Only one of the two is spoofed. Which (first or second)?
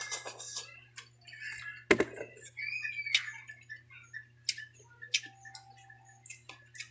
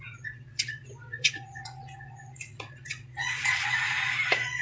second